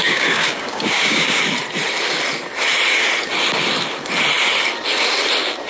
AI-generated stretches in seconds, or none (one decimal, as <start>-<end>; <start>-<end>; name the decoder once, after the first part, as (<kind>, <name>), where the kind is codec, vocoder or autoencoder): 0.0-1.4 (codec, DAC)